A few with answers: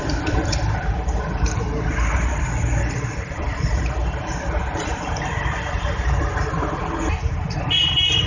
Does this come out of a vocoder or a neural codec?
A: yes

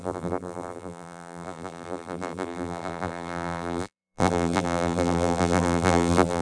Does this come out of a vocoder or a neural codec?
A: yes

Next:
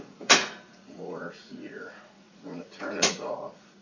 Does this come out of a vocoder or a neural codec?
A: yes